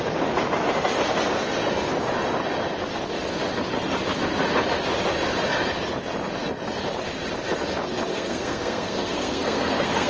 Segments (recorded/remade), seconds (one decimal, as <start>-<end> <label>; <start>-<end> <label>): 0.0-8.1 recorded; 8.1-10.1 remade